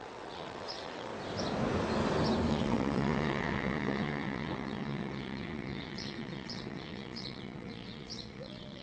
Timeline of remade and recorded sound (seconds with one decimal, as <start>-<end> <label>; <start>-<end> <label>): 0.0-1.1 remade; 1.1-2.5 recorded; 2.5-8.8 remade